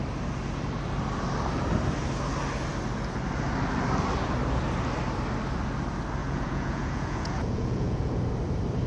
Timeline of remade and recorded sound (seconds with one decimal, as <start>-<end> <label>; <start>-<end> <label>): 0.0-6.2 recorded; 6.2-8.2 remade; 8.2-8.9 recorded